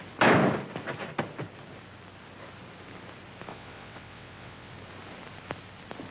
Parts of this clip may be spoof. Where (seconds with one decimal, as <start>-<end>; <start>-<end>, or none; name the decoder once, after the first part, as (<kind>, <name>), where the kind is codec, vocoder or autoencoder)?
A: 3.5-4.7 (vocoder, WaveNeXt)